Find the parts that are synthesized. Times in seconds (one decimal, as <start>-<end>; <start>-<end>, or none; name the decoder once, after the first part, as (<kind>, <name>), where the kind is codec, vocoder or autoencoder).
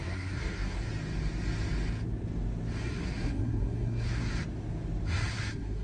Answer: 0.0-0.9 (codec, SNAC); 2.8-4.3; 5.3-5.8